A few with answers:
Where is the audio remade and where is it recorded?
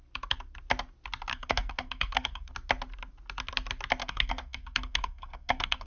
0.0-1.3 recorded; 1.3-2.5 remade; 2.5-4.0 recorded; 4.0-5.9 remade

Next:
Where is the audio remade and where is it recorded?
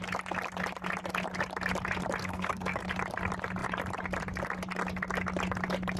0.0-2.2 recorded; 2.2-2.8 remade; 2.8-6.0 recorded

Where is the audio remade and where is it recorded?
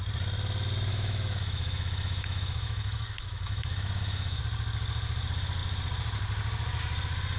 0.0-0.9 recorded; 0.9-4.4 remade; 4.4-7.4 recorded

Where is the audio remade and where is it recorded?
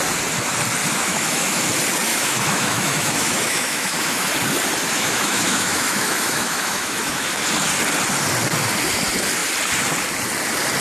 0.0-0.8 recorded; 0.8-1.6 remade; 1.6-2.1 recorded; 2.1-4.3 remade; 4.3-4.9 recorded; 4.9-7.4 remade; 7.4-10.8 recorded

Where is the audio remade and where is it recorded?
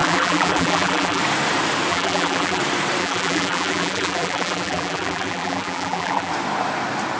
0.0-1.2 remade; 1.2-1.9 recorded; 1.9-2.6 remade; 2.6-3.0 recorded; 3.0-6.3 remade; 6.3-7.2 recorded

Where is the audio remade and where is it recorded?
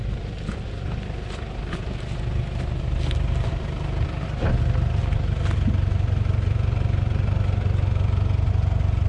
0.0-9.1 recorded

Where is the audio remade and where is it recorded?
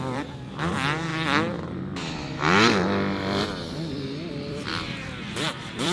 0.0-1.1 remade; 1.1-4.3 recorded; 4.3-5.9 remade